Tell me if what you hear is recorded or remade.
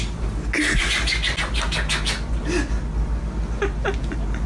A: recorded